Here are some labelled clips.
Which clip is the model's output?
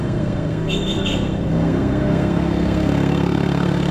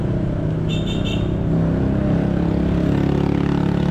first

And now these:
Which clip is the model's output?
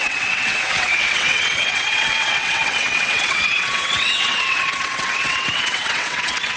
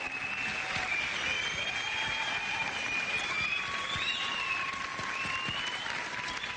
first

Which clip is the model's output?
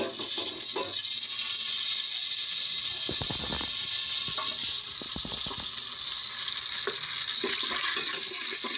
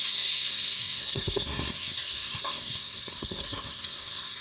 second